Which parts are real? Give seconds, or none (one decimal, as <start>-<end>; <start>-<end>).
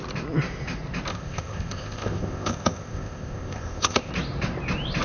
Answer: 0.0-1.1; 4.1-5.0